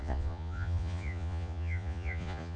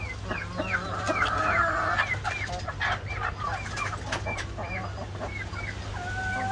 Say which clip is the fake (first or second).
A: first